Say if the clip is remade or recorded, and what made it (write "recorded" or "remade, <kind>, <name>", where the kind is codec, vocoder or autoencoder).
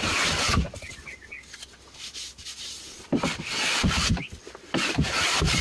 recorded